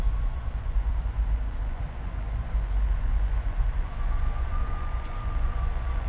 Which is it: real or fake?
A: fake